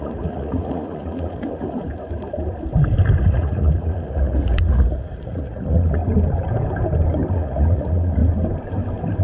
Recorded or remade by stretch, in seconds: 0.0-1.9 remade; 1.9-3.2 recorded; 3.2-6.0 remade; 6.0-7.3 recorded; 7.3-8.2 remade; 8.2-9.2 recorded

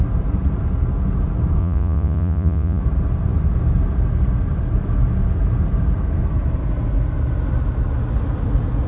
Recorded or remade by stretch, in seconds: 0.0-1.6 recorded; 1.6-2.8 remade; 2.8-8.9 recorded